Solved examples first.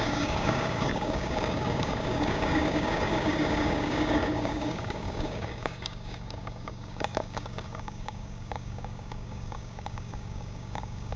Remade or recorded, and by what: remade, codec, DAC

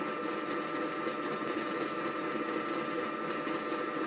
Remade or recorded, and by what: recorded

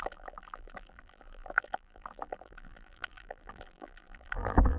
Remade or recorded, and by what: remade, vocoder, BigVGAN v2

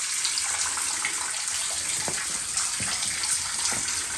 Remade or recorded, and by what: recorded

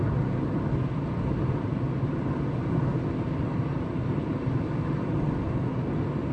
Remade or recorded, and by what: recorded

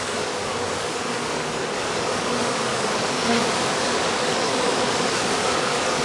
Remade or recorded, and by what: remade, codec, DAC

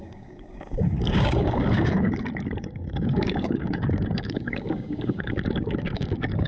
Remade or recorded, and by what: remade, codec, DAC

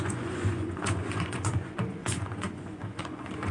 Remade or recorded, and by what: remade, vocoder, Vocos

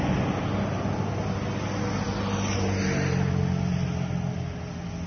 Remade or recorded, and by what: recorded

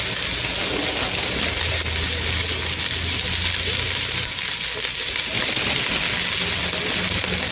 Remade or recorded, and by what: recorded